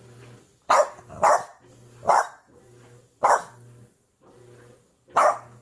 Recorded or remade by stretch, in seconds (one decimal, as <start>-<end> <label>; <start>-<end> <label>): 0.0-5.6 recorded